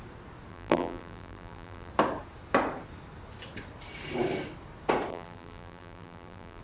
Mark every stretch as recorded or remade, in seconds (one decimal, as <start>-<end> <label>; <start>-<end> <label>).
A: 0.0-0.5 recorded; 0.5-1.9 remade; 1.9-5.1 recorded; 5.1-6.6 remade